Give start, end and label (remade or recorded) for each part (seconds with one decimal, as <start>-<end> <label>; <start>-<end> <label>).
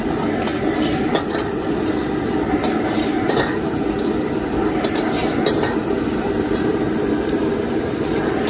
0.0-8.5 recorded